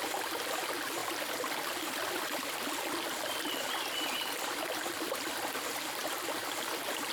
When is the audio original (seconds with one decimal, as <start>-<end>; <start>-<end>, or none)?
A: 0.0-1.0; 5.3-6.0